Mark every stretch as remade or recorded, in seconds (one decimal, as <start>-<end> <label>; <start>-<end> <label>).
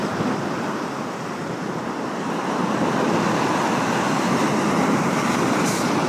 0.0-4.4 recorded; 4.4-5.2 remade; 5.2-6.1 recorded